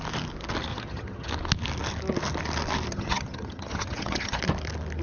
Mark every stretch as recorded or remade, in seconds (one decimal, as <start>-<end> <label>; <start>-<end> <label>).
0.0-0.7 recorded; 0.7-1.3 remade; 1.3-2.9 recorded; 2.9-4.4 remade; 4.4-5.0 recorded